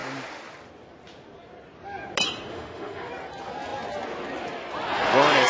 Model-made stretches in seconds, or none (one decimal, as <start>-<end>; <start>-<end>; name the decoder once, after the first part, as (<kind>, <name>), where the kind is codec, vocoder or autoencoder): 2.5-3.1 (autoencoder, DAC-VAE)